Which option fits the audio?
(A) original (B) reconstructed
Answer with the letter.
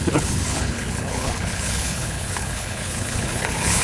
B